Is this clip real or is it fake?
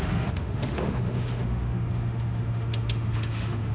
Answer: fake